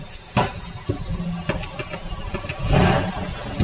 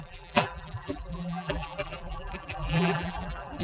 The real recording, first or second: first